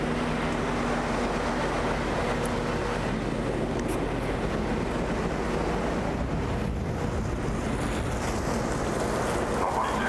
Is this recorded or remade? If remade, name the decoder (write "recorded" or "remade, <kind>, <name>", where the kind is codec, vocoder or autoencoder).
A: recorded